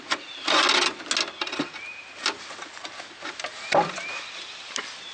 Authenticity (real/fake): real